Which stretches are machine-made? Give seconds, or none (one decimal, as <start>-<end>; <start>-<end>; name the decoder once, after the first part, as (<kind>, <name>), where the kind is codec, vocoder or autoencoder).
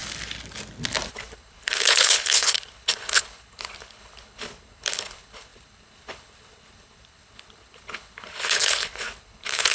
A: 1.1-9.7 (codec, HILCodec)